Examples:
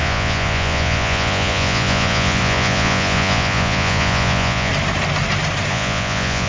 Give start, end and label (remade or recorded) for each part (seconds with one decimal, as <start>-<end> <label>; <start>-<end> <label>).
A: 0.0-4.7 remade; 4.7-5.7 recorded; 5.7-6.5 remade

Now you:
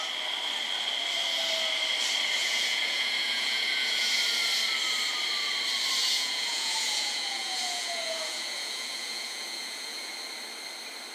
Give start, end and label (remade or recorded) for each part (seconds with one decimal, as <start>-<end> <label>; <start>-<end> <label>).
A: 0.0-2.4 recorded; 2.4-4.2 remade; 4.2-6.0 recorded; 6.0-10.1 remade; 10.1-11.1 recorded

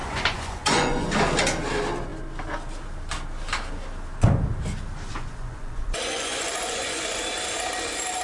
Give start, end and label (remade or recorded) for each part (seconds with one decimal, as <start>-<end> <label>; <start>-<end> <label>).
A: 0.0-1.1 remade; 1.1-5.1 recorded; 5.1-7.2 remade; 7.2-8.2 recorded

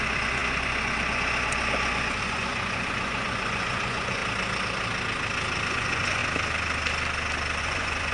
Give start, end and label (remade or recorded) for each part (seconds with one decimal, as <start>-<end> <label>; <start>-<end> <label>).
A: 0.0-4.2 remade; 4.2-5.7 recorded; 5.7-6.2 remade; 6.2-7.6 recorded; 7.6-8.1 remade